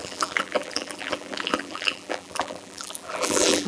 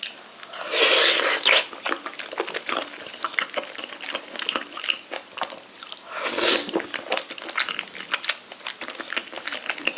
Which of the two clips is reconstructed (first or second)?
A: first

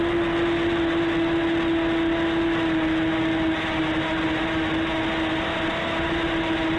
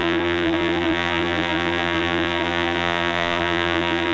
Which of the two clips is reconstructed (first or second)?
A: second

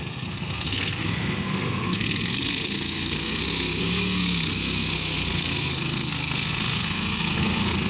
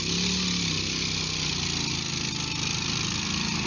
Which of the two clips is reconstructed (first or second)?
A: first